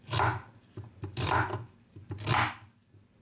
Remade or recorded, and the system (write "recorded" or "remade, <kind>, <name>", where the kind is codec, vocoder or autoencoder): recorded